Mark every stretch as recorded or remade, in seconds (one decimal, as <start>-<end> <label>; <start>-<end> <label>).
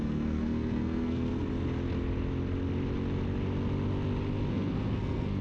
0.0-1.3 remade; 1.3-4.5 recorded; 4.5-5.4 remade